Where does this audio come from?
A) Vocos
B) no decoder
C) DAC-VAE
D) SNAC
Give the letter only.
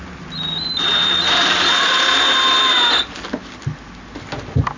B